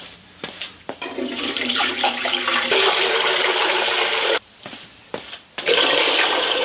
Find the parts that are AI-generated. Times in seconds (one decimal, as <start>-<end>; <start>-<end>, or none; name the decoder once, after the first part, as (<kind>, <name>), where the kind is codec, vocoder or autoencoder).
0.0-6.6 (vocoder, BigVGAN v2)